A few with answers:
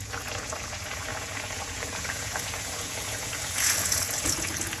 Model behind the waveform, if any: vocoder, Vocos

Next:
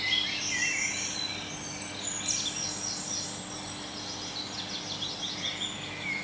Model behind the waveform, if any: none